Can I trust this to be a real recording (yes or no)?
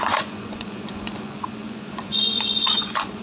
no